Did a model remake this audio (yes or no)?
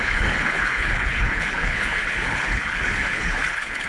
yes